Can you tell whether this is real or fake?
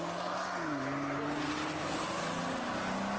real